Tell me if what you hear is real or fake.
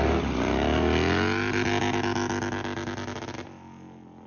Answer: real